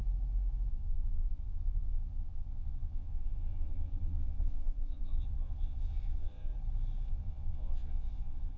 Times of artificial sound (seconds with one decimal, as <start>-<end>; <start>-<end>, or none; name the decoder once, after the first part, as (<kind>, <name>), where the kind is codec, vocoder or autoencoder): 0.7-6.5 (vocoder, Vocos); 7.1-8.6

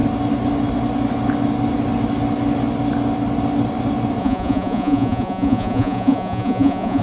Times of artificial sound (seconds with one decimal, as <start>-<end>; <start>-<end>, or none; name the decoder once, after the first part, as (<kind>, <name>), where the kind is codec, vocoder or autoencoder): 4.2-7.0 (vocoder, Vocos)